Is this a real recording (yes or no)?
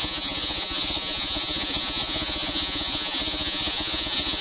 no